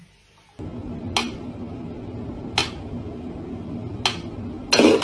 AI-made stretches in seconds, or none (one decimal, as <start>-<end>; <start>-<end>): none